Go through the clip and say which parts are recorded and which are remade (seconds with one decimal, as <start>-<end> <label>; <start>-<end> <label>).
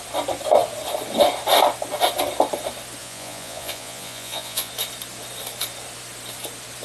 0.0-3.0 recorded; 3.0-4.7 remade; 4.7-6.8 recorded